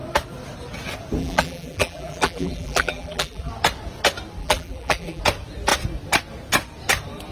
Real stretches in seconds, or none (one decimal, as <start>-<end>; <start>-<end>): 0.0-1.2; 3.5-4.4; 5.2-7.3